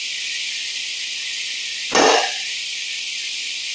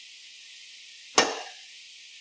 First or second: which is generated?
first